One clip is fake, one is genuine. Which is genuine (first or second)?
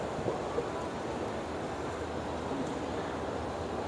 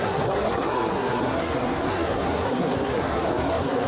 first